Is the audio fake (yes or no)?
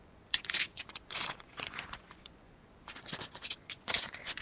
yes